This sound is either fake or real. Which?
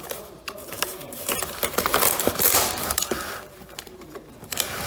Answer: fake